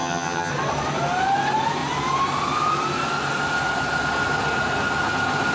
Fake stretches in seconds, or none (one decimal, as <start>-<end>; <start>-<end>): 0.0-0.5